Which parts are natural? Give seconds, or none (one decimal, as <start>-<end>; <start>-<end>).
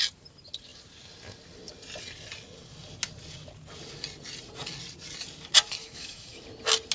0.0-5.8; 6.4-6.9